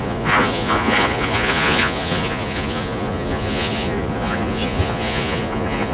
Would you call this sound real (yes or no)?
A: no